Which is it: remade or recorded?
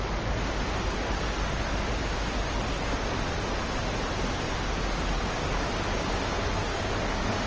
recorded